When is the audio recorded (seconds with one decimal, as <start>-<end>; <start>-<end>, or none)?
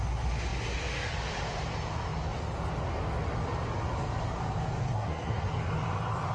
0.0-4.8; 5.5-6.3